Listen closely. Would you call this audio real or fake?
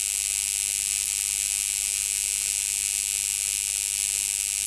real